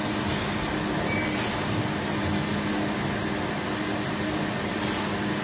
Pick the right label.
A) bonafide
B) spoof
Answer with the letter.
A